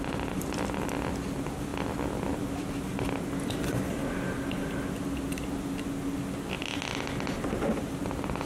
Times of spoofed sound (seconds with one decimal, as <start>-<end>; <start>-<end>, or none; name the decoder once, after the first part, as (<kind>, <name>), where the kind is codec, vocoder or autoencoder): none